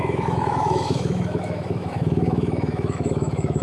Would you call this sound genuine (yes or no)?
no